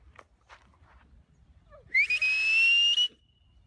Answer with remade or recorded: recorded